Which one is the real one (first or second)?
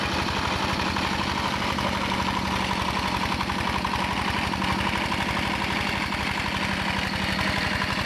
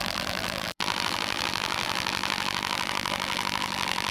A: first